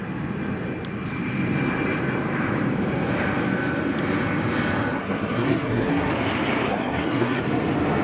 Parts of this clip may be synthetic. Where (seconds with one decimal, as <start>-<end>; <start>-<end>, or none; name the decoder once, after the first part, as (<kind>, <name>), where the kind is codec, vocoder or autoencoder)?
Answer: 5.0-6.1 (codec, SNAC); 6.7-7.4